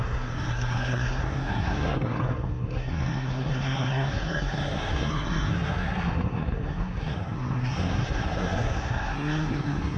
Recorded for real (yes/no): no